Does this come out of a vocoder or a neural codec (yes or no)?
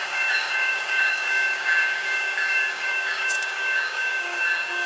yes